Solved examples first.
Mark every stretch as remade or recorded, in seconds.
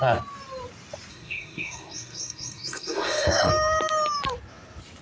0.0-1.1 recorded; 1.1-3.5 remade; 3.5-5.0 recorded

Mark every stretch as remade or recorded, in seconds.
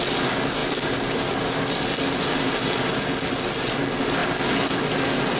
0.0-5.4 recorded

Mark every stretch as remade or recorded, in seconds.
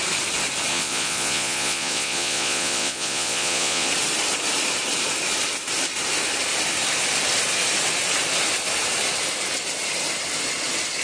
0.0-0.7 recorded; 0.7-3.9 remade; 3.9-11.0 recorded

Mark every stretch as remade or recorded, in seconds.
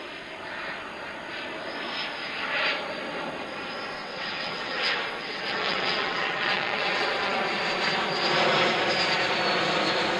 0.0-4.0 recorded; 4.0-7.4 remade; 7.4-10.2 recorded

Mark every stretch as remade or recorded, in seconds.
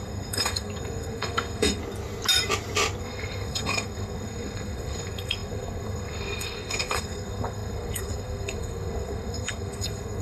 0.0-1.8 remade; 1.8-3.0 recorded; 3.0-10.2 remade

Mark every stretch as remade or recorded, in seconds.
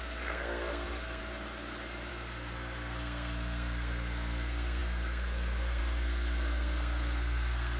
0.0-1.2 remade; 1.2-2.1 recorded; 2.1-7.8 remade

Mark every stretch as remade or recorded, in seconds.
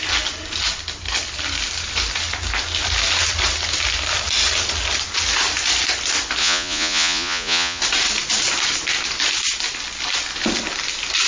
0.0-6.4 recorded; 6.4-7.8 remade; 7.8-11.3 recorded